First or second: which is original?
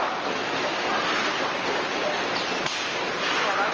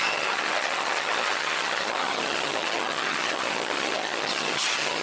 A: first